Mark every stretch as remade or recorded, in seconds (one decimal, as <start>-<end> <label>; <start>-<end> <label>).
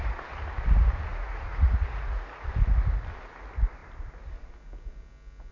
0.0-1.1 recorded; 1.1-2.5 remade; 2.5-5.5 recorded